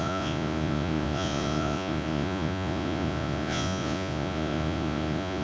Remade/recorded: remade